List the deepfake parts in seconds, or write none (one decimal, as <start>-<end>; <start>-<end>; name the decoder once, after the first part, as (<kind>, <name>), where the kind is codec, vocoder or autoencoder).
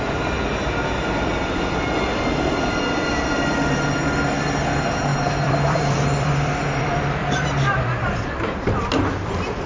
5.1-8.7 (vocoder, BigVGAN v2)